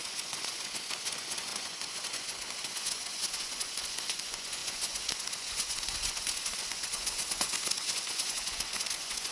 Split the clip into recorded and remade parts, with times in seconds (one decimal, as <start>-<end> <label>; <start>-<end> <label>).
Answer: 0.0-9.3 remade